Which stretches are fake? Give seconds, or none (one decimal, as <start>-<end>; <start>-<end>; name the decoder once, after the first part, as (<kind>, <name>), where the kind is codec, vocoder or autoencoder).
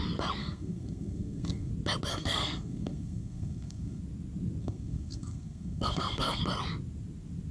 0.4-1.7 (codec, SNAC); 2.1-4.0; 4.6-6.4